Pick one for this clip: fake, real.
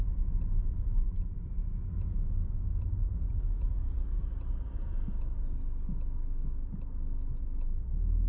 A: real